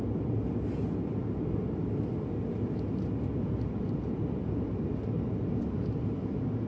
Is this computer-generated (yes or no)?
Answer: no